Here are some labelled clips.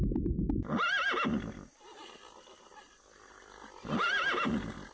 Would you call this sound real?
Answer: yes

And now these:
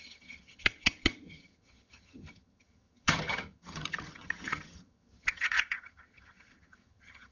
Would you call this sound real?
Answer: no